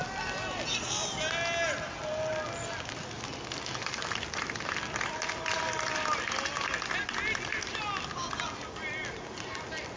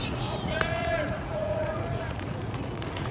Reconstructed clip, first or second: second